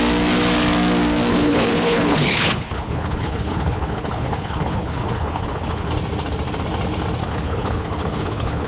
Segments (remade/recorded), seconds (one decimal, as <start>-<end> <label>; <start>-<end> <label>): 0.0-1.3 recorded; 1.3-5.9 remade; 5.9-7.2 recorded; 7.2-8.7 remade